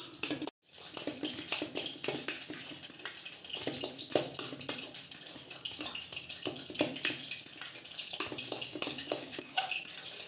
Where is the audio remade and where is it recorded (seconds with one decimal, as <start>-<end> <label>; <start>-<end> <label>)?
0.0-8.7 recorded; 8.7-9.6 remade; 9.6-10.3 recorded